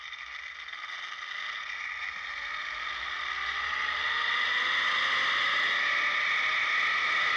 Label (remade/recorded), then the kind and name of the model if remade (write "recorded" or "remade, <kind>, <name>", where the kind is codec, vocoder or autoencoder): recorded